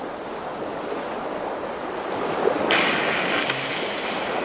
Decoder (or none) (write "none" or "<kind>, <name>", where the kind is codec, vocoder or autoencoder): none